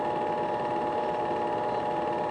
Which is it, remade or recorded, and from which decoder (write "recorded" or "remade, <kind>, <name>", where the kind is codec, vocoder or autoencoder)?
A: recorded